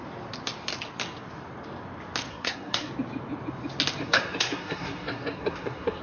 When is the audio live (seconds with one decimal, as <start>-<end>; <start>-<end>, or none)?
0.0-2.3; 2.9-4.0